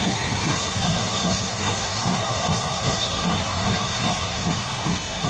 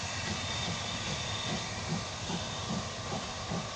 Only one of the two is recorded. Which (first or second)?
second